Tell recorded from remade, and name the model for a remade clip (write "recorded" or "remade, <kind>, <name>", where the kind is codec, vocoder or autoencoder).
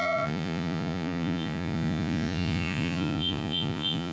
remade, vocoder, Vocos